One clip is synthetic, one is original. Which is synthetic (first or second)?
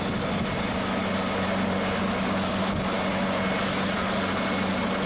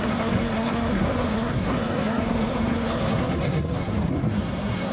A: second